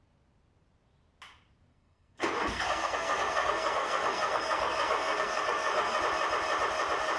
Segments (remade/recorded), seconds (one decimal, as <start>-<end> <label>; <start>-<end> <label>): 0.0-1.7 recorded; 1.7-6.0 remade; 6.0-7.2 recorded